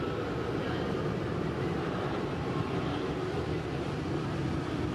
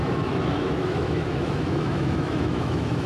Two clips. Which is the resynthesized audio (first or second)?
second